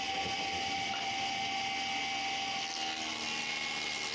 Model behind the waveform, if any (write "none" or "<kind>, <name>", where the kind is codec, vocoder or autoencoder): none